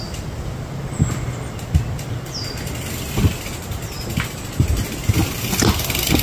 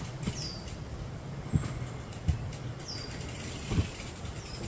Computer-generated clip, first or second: second